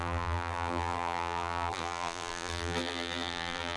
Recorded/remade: remade